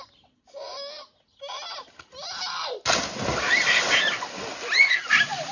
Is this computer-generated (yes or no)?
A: no